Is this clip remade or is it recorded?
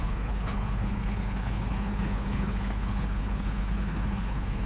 remade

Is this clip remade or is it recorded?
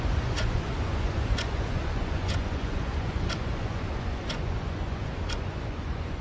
remade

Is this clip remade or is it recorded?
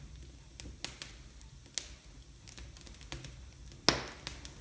recorded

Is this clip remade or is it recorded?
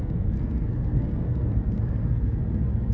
remade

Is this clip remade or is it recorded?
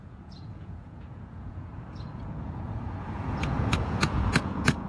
remade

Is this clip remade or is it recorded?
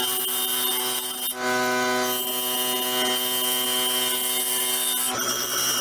recorded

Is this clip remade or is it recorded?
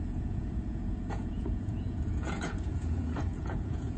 remade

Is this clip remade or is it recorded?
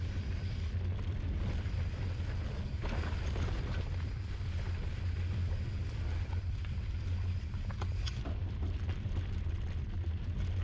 remade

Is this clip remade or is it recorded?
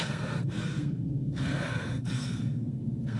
remade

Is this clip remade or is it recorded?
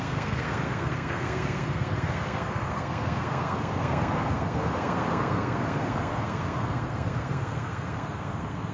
remade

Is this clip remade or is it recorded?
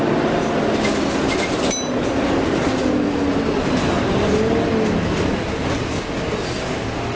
recorded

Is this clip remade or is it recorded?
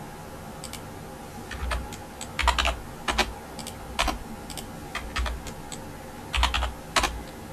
recorded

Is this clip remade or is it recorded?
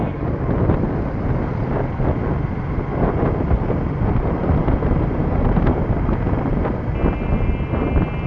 recorded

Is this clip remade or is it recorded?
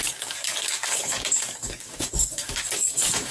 remade